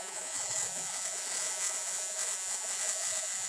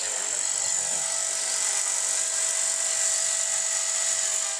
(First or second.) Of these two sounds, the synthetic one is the first